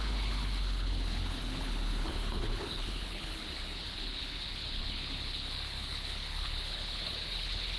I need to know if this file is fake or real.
fake